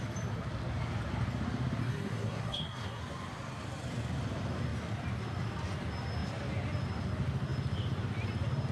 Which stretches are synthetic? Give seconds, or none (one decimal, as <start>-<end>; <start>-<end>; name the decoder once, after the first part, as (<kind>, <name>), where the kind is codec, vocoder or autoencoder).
1.8-3.0 (codec, SNAC)